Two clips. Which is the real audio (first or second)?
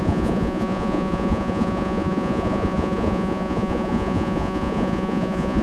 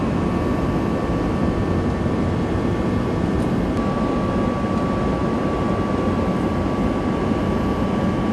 second